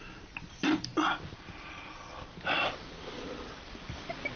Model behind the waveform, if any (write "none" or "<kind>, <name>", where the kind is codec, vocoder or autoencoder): vocoder, BigVGAN v2